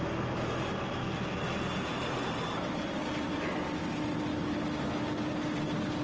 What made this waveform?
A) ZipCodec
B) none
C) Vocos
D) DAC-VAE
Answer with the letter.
B